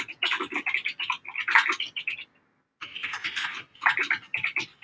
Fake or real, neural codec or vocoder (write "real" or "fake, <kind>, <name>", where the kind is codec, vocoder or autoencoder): real